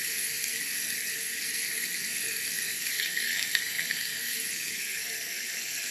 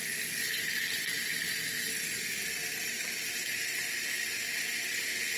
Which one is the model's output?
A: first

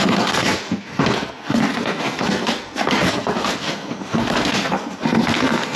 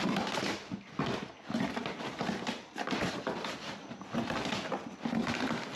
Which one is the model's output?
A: first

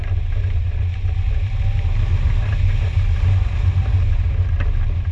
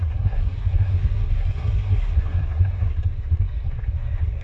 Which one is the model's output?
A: second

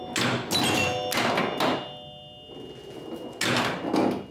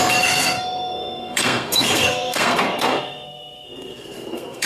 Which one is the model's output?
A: second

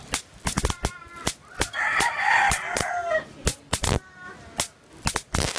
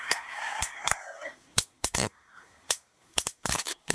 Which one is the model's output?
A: second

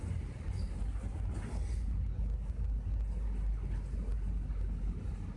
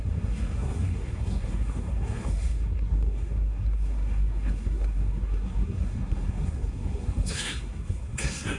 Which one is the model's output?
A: second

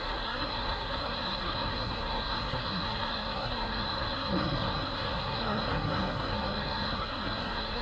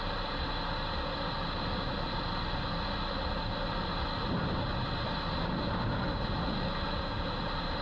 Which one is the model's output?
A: first